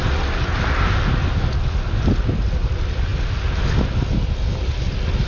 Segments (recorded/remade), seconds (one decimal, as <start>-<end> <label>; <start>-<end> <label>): 0.0-5.3 recorded